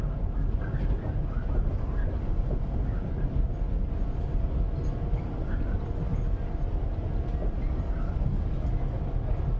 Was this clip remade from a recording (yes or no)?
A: no